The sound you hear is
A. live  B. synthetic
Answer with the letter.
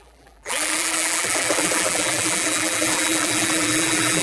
B